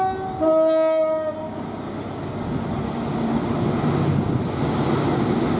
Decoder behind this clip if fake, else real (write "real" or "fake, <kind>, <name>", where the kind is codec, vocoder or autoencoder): real